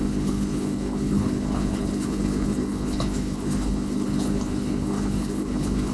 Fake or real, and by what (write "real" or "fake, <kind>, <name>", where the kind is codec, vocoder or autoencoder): fake, codec, HILCodec